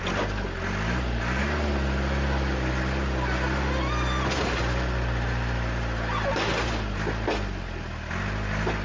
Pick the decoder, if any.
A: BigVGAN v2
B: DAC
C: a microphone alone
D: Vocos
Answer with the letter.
C